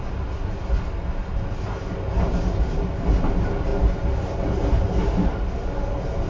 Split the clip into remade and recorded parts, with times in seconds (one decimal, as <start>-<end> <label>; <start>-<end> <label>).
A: 0.0-6.3 recorded